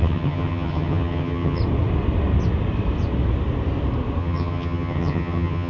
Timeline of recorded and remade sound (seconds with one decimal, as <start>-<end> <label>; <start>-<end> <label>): 0.0-1.6 remade; 1.6-4.2 recorded; 4.2-5.7 remade

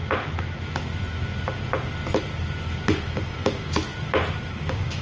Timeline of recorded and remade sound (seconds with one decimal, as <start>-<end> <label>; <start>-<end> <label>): 0.0-3.0 recorded; 3.0-3.9 remade; 3.9-4.5 recorded; 4.5-5.0 remade

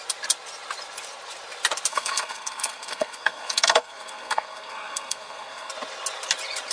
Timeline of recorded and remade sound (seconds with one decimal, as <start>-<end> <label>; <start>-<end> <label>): 0.0-1.9 recorded; 1.9-5.7 remade; 5.7-6.7 recorded